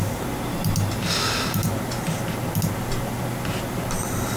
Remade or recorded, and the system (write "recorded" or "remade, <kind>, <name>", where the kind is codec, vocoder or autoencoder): recorded